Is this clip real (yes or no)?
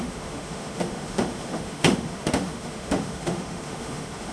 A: no